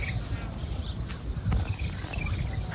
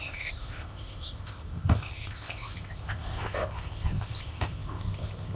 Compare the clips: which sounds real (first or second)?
first